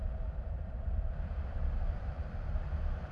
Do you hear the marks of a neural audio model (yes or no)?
yes